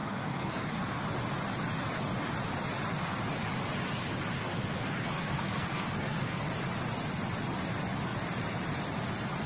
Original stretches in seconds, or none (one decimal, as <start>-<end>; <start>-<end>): 1.0-4.5; 6.4-9.5